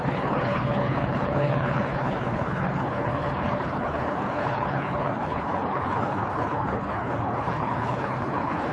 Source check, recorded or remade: remade